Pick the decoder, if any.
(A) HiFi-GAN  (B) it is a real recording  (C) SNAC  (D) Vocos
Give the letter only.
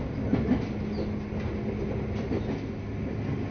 B